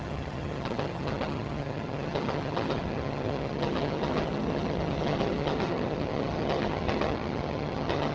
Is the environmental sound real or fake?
fake